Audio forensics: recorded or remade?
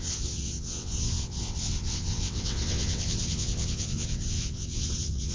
remade